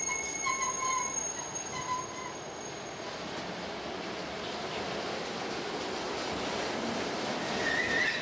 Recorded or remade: recorded